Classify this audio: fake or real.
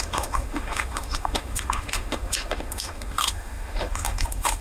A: fake